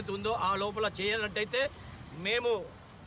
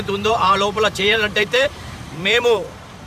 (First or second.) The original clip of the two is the first